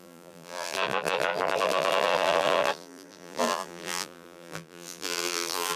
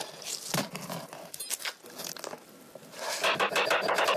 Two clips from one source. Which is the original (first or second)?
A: second